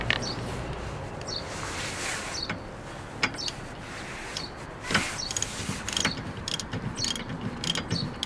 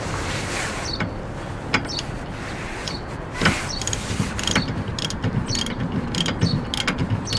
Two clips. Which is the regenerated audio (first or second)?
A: second